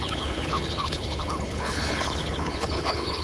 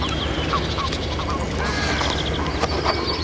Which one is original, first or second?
second